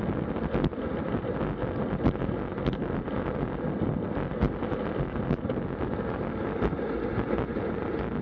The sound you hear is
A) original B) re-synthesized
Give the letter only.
A